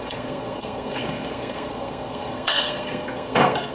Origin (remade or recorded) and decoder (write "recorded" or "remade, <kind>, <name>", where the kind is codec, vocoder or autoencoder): remade, codec, SNAC